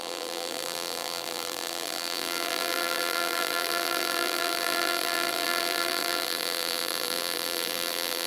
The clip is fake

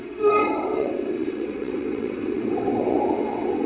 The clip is fake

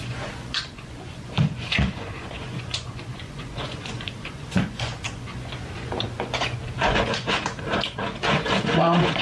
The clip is fake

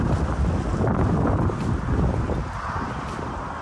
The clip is real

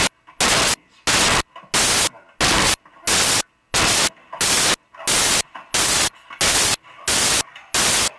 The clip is real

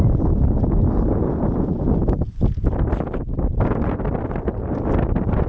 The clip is real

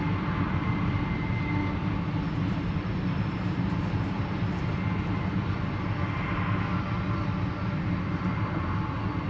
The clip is real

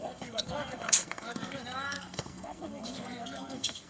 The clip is fake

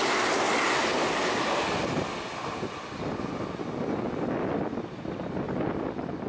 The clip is real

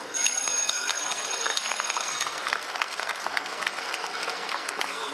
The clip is fake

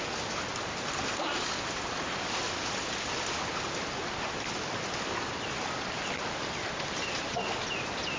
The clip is real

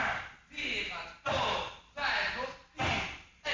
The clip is real